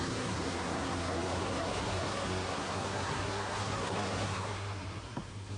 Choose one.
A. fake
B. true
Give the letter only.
A